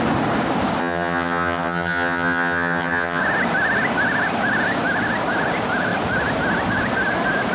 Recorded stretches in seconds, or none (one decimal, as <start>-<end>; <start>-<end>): 0.0-0.8; 3.2-7.5